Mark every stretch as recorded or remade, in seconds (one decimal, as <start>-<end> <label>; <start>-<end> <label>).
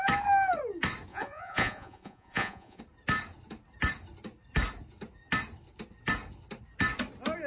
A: 0.0-1.1 recorded; 1.1-2.8 remade; 2.8-7.5 recorded